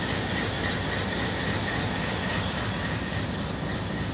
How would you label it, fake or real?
real